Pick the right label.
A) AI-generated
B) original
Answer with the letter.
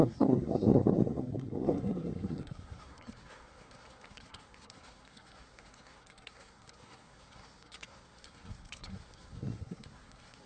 A